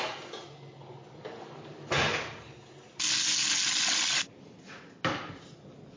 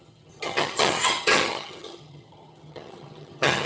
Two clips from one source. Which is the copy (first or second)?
second